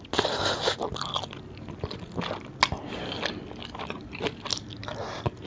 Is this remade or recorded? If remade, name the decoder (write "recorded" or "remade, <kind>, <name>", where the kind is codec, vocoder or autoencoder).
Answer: recorded